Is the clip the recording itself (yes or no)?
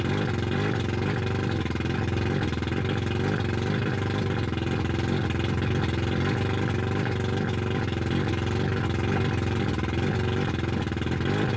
yes